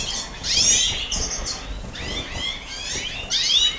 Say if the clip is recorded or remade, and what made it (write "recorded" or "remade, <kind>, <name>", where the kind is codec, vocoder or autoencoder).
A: recorded